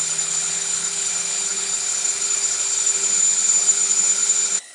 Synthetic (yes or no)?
yes